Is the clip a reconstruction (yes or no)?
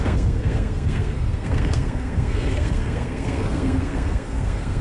yes